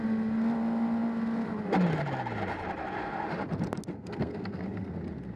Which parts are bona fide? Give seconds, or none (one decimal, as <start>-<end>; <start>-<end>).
0.0-3.9; 4.9-5.4